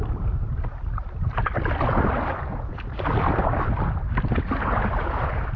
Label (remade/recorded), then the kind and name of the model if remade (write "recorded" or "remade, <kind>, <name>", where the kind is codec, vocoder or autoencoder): recorded